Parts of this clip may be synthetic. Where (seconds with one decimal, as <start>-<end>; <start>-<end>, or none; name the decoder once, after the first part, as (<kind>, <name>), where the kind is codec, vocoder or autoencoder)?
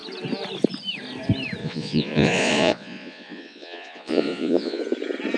1.6-4.8 (vocoder, Vocos)